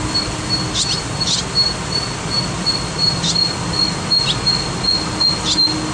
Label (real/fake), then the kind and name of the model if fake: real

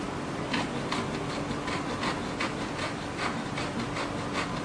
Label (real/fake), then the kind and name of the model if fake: real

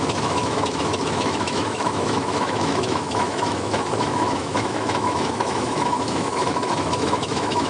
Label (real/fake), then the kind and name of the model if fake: fake, autoencoder, DAC-VAE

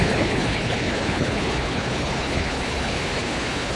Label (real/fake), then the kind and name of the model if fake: fake, codec, HILCodec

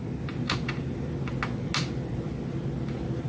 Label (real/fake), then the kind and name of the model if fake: real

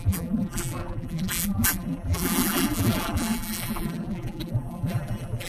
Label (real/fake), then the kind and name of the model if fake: fake, vocoder, BigVGAN v2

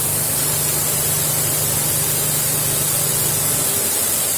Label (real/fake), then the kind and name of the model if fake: real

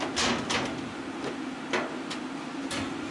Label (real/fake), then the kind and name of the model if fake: real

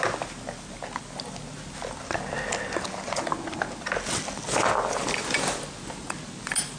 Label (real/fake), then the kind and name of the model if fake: real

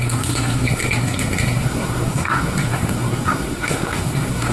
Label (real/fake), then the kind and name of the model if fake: fake, codec, SNAC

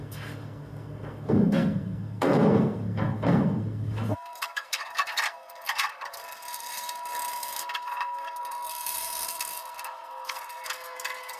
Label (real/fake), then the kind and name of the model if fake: fake, codec, SNAC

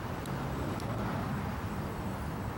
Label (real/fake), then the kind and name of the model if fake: real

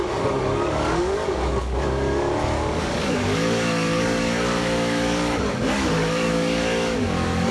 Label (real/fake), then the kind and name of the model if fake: fake, codec, DAC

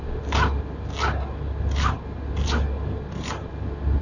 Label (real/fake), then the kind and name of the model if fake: real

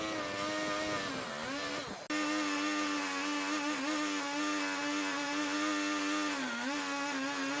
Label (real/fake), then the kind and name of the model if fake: real